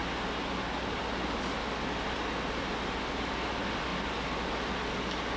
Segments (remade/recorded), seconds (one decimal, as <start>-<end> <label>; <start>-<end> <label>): 0.0-5.4 recorded